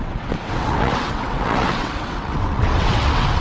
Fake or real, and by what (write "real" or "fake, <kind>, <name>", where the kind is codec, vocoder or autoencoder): fake, vocoder, WaveNeXt